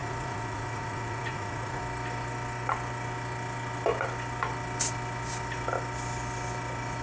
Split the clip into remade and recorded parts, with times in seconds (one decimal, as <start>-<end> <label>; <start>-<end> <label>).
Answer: 0.0-1.8 remade; 1.8-7.0 recorded